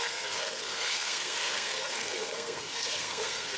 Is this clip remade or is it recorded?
remade